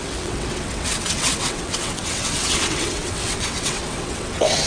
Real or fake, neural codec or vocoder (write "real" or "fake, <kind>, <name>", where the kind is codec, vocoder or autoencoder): fake, vocoder, WaveNeXt